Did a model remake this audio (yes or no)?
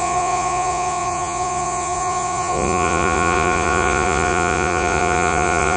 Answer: yes